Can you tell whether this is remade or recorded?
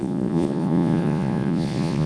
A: remade